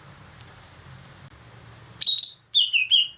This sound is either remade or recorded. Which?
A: recorded